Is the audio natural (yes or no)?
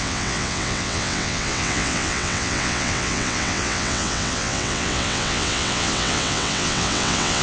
no